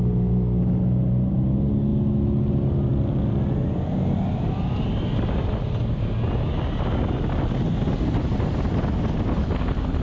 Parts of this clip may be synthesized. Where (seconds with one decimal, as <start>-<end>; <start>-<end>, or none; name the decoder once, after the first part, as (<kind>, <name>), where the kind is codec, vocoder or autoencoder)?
none